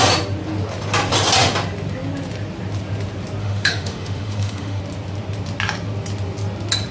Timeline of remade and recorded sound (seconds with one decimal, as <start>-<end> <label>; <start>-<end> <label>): 0.0-3.4 recorded; 3.4-4.8 remade; 4.8-6.9 recorded